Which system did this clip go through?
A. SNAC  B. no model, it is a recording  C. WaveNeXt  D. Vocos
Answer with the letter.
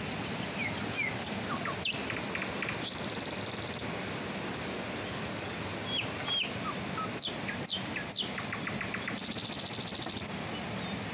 B